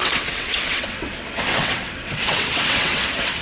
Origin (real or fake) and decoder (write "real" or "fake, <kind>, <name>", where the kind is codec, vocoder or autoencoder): fake, vocoder, WaveNeXt